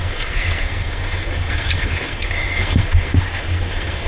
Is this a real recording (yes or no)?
no